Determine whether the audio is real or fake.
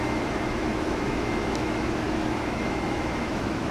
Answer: fake